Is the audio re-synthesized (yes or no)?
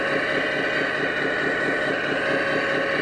no